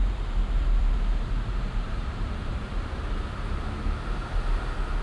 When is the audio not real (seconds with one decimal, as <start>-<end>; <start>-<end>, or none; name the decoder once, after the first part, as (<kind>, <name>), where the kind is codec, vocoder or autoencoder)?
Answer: 0.0-2.7 (vocoder, BigVGAN v2)